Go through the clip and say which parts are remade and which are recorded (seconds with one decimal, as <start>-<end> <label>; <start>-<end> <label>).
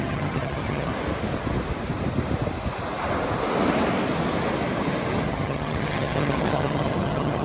0.0-0.9 remade; 0.9-5.3 recorded; 5.3-7.4 remade